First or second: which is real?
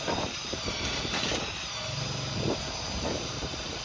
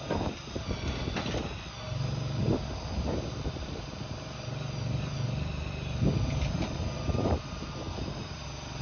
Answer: second